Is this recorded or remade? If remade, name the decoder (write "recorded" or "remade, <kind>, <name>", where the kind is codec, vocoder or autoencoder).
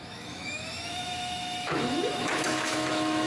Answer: remade, autoencoder, DAC-VAE